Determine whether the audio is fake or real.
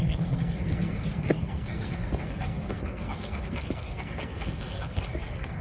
fake